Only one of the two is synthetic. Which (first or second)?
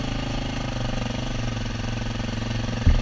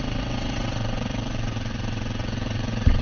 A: second